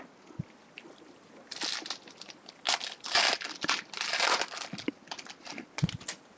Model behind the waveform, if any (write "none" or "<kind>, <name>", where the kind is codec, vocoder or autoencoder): none